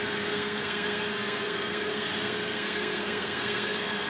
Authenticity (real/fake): fake